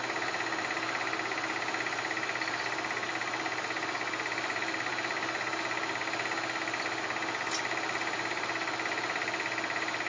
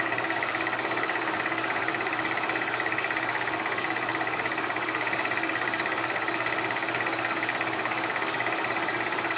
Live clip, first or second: first